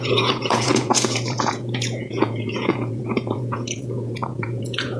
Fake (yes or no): yes